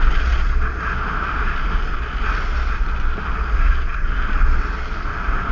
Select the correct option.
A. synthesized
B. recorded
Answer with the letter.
B